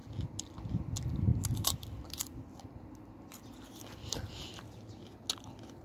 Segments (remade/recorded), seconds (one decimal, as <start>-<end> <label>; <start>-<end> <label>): 0.0-5.8 recorded